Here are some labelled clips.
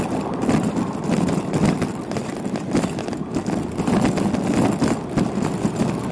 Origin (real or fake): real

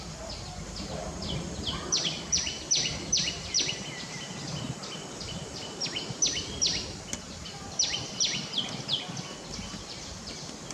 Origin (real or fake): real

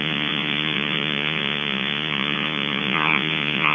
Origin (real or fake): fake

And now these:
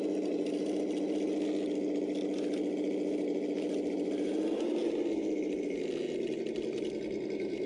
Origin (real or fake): real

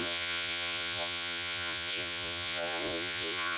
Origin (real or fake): fake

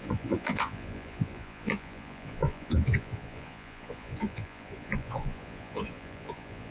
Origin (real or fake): fake